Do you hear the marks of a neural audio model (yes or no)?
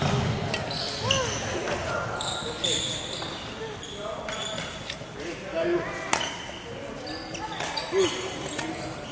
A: no